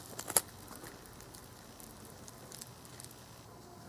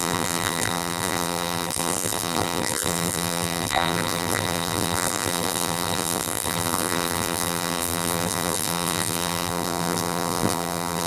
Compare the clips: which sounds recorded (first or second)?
first